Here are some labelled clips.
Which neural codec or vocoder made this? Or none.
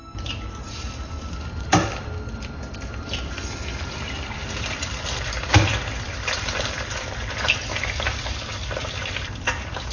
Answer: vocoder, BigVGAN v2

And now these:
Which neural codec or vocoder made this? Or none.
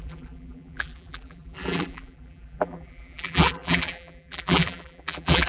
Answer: vocoder, BigVGAN v2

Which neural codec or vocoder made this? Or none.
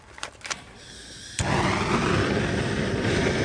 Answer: none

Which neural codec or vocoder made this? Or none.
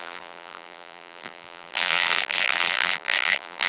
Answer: vocoder, BigVGAN v2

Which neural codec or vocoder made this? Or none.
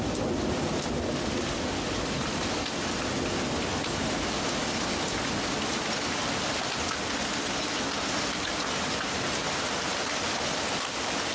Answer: none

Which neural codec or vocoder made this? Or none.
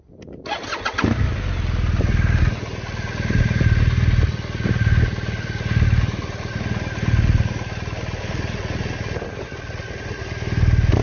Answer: none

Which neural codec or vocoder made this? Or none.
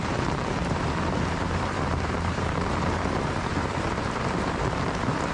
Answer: vocoder, BigVGAN v2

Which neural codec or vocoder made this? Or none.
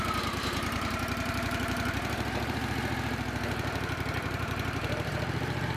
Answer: vocoder, BigVGAN v2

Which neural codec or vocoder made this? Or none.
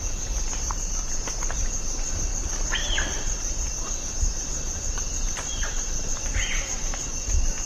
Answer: vocoder, BigVGAN v2